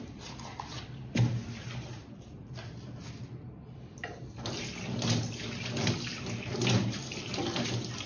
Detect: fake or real real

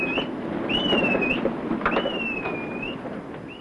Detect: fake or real real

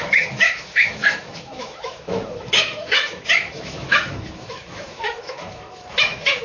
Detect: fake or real fake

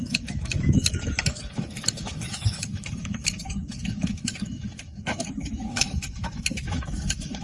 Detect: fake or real fake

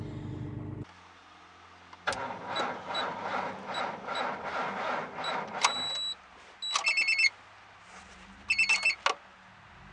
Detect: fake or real real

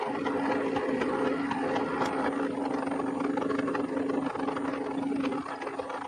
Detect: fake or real real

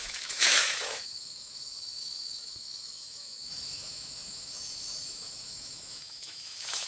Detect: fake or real fake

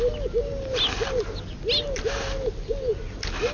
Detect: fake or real real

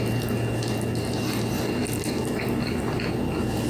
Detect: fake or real real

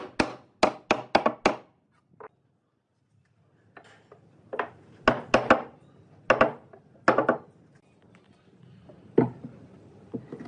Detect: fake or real real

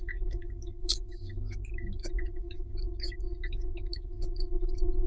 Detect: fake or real fake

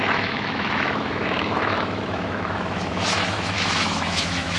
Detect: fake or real fake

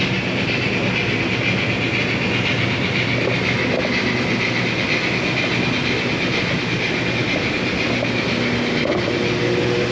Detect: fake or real real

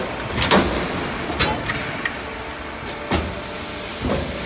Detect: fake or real real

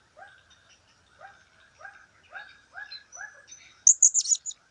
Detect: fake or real real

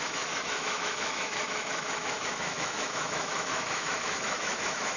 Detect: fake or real fake